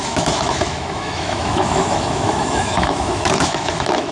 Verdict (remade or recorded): remade